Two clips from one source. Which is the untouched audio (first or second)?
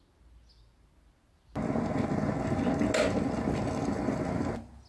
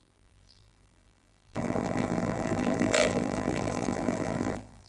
first